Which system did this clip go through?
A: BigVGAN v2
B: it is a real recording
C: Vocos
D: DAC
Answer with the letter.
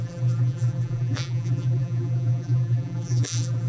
A